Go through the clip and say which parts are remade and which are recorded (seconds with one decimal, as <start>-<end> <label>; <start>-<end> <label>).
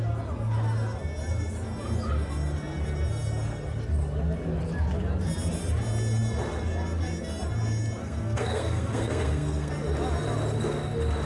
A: 0.0-8.0 recorded; 8.0-9.7 remade; 9.7-11.3 recorded